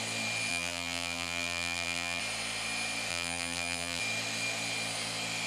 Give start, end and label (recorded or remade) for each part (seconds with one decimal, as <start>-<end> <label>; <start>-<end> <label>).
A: 0.0-0.5 recorded; 0.5-2.2 remade; 2.2-3.1 recorded; 3.1-4.0 remade; 4.0-5.5 recorded